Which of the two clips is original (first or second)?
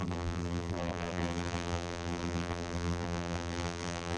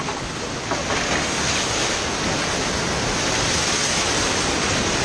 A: second